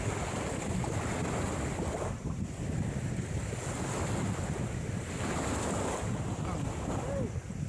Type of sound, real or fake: real